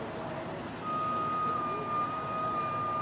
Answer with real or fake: real